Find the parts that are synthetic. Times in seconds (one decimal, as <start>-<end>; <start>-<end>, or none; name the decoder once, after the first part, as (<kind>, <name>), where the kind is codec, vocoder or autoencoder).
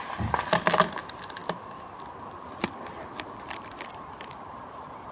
none